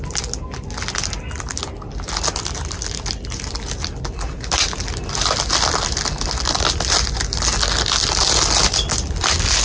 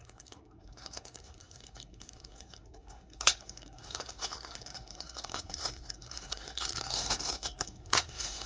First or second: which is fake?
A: second